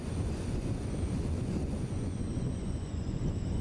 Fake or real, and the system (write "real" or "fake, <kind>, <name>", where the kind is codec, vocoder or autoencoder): fake, vocoder, Vocos